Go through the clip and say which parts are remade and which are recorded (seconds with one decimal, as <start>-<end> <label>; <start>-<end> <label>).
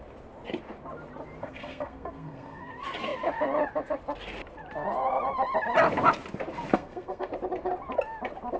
0.0-1.4 recorded; 1.4-2.7 remade; 2.7-6.7 recorded; 6.7-7.3 remade; 7.3-8.6 recorded